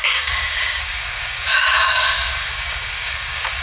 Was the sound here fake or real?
fake